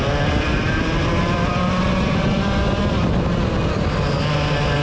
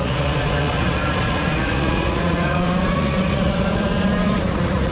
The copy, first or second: second